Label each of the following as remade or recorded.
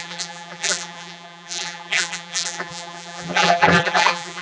remade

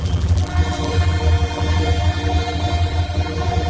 remade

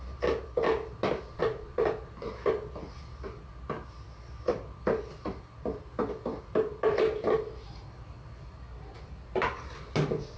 recorded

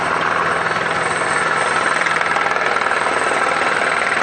recorded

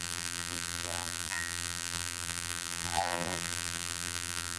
remade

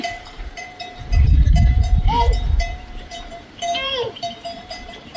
remade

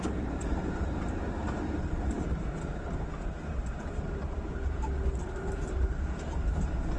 remade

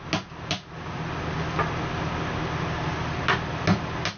recorded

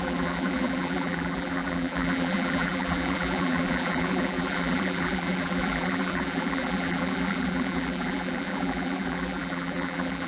remade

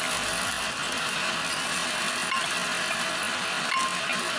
recorded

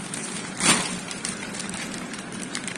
remade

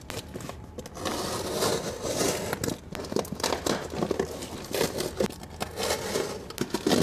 recorded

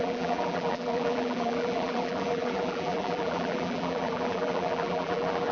remade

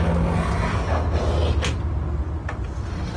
recorded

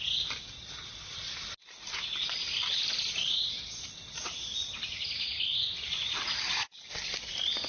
recorded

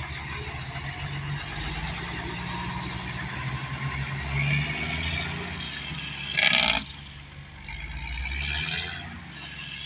recorded